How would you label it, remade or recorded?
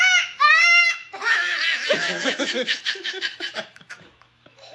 remade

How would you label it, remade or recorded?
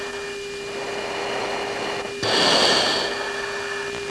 recorded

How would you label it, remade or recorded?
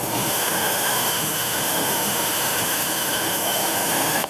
remade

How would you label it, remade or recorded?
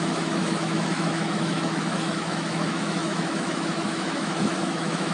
remade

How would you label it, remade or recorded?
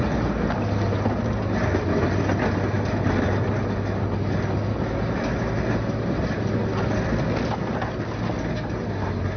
recorded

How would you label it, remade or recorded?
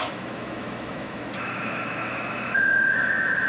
remade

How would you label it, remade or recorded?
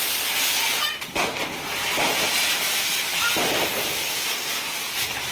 recorded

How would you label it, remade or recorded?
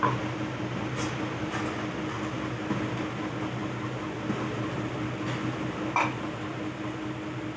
recorded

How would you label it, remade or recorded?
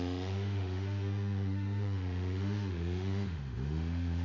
remade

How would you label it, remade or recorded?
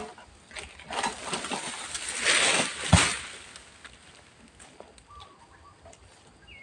recorded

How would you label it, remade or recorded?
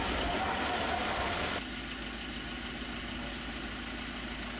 recorded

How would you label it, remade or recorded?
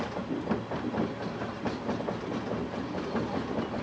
recorded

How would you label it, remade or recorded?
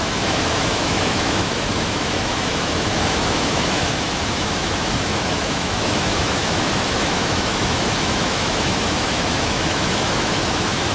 remade